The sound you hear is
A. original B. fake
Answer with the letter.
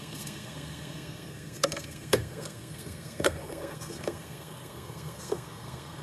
B